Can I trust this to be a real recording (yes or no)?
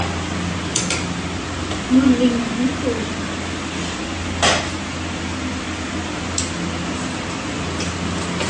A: yes